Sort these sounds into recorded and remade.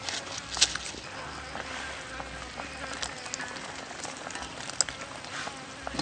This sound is recorded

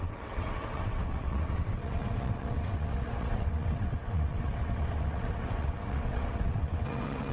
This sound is remade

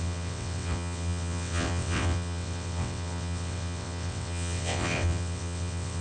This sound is remade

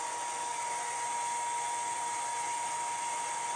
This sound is recorded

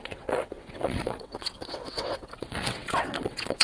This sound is remade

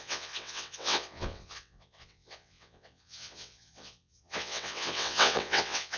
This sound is remade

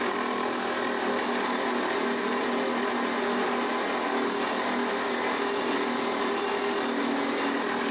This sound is recorded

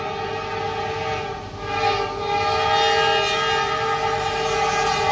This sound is recorded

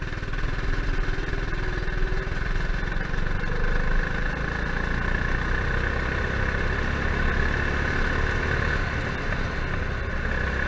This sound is recorded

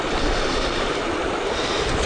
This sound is recorded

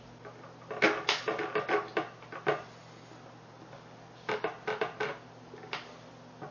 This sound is recorded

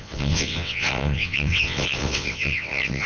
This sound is remade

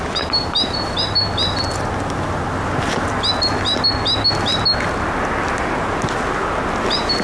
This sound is recorded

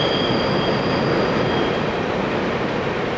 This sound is recorded